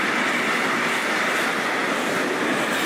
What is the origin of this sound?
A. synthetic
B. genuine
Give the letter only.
B